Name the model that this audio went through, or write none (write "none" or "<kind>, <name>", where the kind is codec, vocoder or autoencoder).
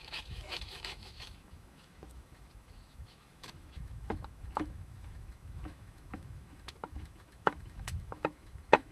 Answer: autoencoder, DAC-VAE